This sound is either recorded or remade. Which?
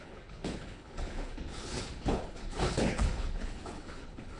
remade